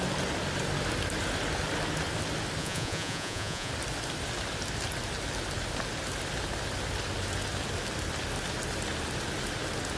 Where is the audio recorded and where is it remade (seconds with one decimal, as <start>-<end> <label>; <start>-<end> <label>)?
0.0-2.6 recorded; 2.6-3.7 remade; 3.7-10.0 recorded

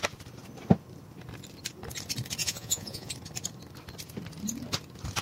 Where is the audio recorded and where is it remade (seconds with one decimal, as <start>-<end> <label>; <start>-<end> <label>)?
0.0-2.4 recorded; 2.4-3.1 remade; 3.1-5.2 recorded

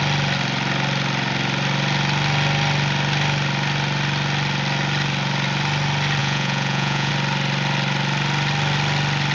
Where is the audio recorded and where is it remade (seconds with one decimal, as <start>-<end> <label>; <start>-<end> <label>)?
0.0-6.2 recorded; 6.2-7.1 remade; 7.1-9.3 recorded